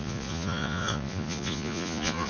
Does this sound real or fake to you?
fake